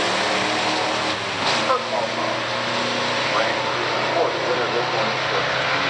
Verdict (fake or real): real